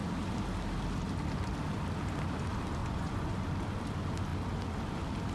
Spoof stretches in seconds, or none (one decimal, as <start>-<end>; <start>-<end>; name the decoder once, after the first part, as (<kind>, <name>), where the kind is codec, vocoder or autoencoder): 2.8-3.3 (vocoder, Vocos)